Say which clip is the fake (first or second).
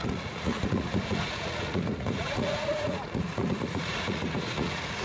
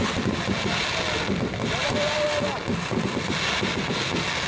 first